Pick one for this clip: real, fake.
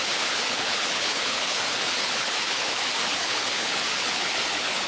fake